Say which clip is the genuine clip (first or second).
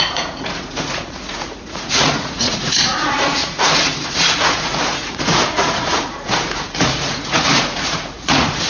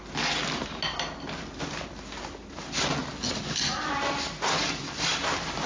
second